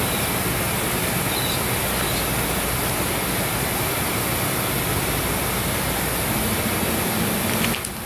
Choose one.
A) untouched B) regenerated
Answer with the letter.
A